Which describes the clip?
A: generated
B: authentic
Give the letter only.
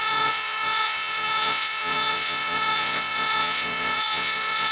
A